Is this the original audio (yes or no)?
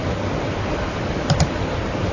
yes